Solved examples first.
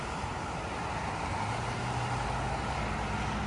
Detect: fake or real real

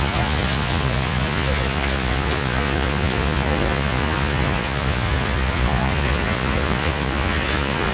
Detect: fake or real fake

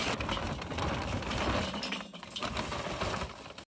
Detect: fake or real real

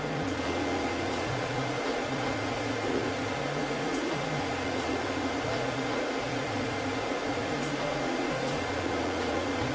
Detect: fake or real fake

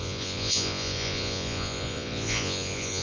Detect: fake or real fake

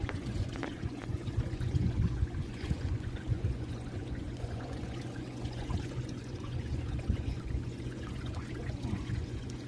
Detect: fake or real fake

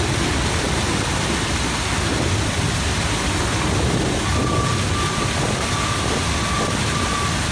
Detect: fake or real real